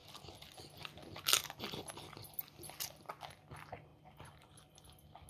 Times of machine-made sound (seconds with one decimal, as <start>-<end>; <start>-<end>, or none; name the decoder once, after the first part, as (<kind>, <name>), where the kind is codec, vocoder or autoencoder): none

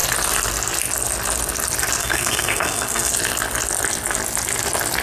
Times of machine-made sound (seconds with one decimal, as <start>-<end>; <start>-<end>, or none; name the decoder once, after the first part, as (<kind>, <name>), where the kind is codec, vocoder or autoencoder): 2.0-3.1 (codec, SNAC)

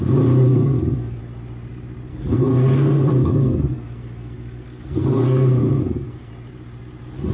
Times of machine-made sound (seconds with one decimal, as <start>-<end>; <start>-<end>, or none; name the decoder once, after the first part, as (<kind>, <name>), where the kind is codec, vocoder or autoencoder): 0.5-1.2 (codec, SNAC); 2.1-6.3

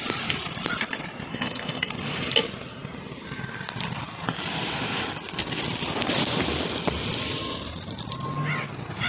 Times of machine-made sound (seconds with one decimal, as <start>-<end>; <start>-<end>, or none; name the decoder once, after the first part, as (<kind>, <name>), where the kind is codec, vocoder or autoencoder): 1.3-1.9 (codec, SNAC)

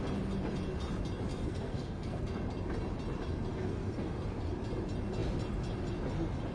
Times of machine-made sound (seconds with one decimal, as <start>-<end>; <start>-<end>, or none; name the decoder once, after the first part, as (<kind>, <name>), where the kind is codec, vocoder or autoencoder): 1.3-2.4 (codec, SNAC); 3.5-4.2

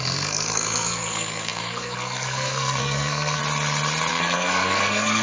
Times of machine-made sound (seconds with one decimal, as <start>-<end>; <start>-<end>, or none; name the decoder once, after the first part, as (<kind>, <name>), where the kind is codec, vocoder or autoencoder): 0.0-3.4 (codec, SNAC); 4.1-5.2

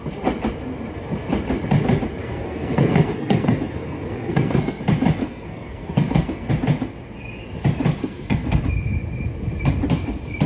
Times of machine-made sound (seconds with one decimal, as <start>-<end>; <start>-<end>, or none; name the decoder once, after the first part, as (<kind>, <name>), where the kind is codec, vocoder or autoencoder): 2.2-4.8 (codec, SNAC); 5.2-6.5; 8.0-8.6

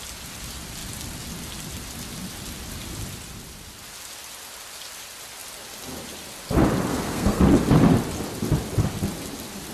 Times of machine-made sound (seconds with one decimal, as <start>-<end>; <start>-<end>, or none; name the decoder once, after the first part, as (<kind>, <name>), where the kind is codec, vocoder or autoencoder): 6.9-7.4 (codec, SNAC)